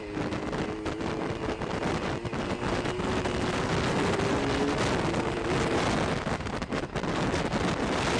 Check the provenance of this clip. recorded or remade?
recorded